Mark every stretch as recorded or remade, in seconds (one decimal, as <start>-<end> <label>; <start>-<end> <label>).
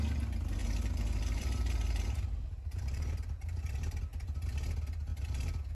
0.0-0.6 recorded; 0.6-4.0 remade; 4.0-5.1 recorded; 5.1-5.7 remade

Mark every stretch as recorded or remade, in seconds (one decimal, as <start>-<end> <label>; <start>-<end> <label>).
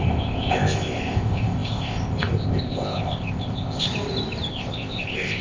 0.0-3.9 remade; 3.9-4.5 recorded; 4.5-5.4 remade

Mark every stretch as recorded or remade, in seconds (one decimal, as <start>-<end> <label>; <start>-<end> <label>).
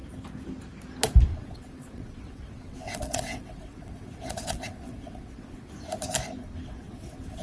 0.0-1.3 recorded; 1.3-5.7 remade; 5.7-6.4 recorded; 6.4-7.4 remade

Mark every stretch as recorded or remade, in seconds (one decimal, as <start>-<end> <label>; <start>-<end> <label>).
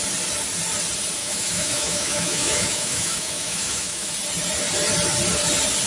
0.0-1.2 recorded; 1.2-4.1 remade; 4.1-5.9 recorded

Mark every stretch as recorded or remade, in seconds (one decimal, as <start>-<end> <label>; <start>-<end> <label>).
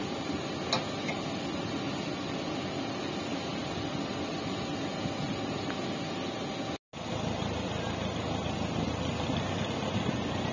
0.0-10.5 recorded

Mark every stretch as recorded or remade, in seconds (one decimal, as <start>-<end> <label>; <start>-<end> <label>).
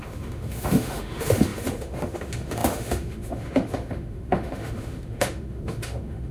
0.0-6.3 remade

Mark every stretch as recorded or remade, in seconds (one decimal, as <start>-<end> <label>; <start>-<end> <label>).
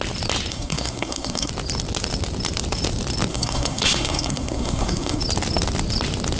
0.0-0.5 recorded; 0.5-1.5 remade; 1.5-3.3 recorded; 3.3-5.2 remade; 5.2-6.4 recorded